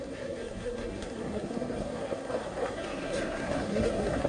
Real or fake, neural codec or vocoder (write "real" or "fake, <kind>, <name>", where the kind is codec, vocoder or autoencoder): fake, codec, SNAC